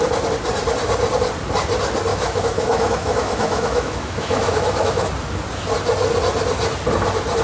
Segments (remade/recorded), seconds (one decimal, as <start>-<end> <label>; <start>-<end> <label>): 0.0-2.1 recorded; 2.1-5.1 remade; 5.1-7.4 recorded